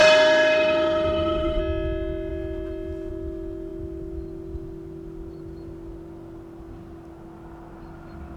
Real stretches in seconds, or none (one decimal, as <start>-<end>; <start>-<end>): 1.6-8.4